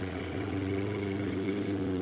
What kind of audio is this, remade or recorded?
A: remade